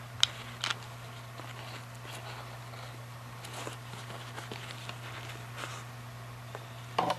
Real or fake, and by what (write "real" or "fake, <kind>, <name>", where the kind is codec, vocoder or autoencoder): real